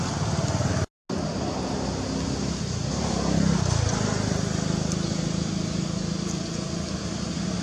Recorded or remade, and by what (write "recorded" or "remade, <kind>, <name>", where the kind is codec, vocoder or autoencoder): recorded